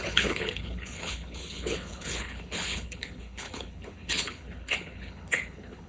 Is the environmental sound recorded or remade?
remade